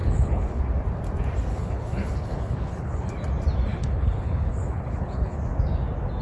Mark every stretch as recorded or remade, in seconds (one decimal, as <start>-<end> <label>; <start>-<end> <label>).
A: 0.0-0.6 remade; 0.6-1.5 recorded; 1.5-3.1 remade; 3.1-3.7 recorded; 3.7-5.4 remade; 5.4-6.2 recorded